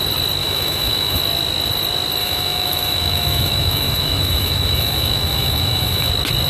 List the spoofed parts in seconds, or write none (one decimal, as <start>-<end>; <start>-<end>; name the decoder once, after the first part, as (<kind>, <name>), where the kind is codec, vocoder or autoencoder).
0.4-1.2 (autoencoder, DAC-VAE); 2.2-6.1